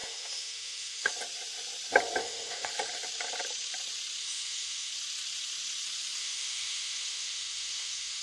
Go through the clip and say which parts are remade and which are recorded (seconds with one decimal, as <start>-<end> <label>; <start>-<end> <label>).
0.0-1.1 remade; 1.1-2.2 recorded; 2.2-2.7 remade; 2.7-4.2 recorded; 4.2-4.9 remade; 4.9-6.2 recorded; 6.2-8.2 remade